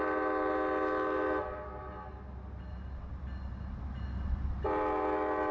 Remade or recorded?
recorded